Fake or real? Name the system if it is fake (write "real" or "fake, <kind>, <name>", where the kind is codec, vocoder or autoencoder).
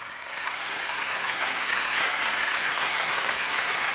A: fake, codec, SNAC